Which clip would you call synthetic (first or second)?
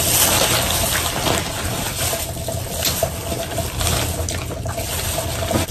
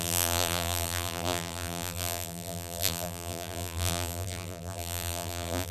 second